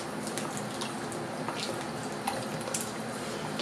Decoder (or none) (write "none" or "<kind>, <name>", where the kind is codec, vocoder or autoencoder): none